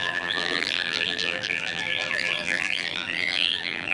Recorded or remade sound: remade